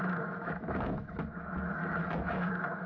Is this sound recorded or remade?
remade